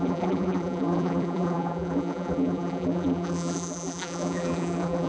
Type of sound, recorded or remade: remade